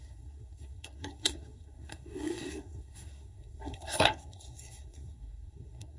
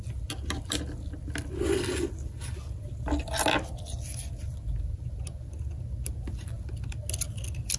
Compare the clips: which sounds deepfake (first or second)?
first